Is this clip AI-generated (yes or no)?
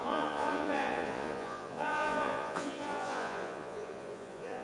yes